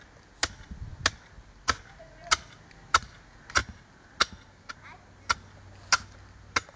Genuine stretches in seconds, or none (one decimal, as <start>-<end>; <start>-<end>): 0.0-6.8